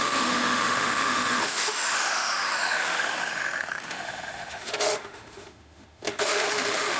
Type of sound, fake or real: fake